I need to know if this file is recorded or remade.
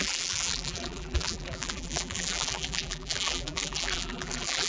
remade